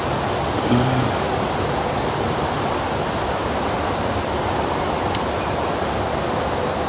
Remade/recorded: recorded